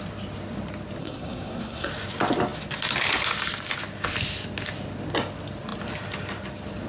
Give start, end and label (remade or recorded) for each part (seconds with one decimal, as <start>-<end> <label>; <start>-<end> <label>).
0.0-1.0 recorded; 1.0-1.9 remade; 1.9-6.9 recorded